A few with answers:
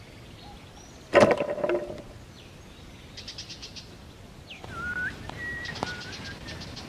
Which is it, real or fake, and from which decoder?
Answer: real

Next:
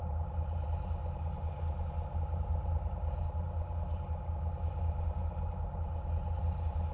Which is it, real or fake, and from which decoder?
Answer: real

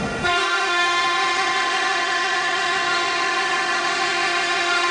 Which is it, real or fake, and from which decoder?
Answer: fake, autoencoder, DAC-VAE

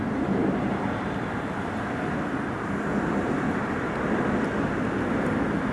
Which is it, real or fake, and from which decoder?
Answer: real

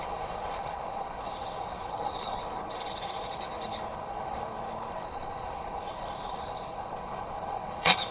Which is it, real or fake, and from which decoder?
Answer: fake, codec, HILCodec